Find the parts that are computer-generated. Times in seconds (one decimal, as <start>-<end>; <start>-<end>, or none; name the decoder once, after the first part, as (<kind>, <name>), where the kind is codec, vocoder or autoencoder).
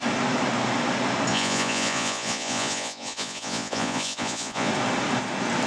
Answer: 1.3-4.7 (vocoder, Vocos)